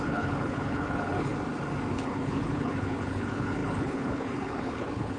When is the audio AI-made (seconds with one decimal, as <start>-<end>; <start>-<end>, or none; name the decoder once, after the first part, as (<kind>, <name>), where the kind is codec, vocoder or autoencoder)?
0.0-1.3 (codec, HILCodec); 1.9-5.2